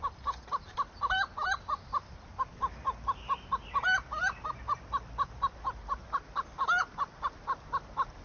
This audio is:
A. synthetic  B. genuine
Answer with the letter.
B